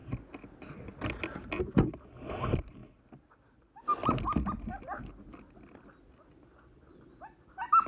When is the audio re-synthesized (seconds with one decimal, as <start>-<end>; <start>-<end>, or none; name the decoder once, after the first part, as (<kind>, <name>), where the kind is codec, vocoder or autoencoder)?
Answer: none